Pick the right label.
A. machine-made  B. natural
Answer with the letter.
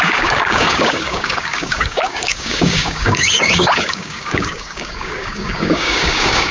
A